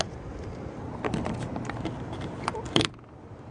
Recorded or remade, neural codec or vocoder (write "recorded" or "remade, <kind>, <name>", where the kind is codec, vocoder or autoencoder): remade, vocoder, BigVGAN v2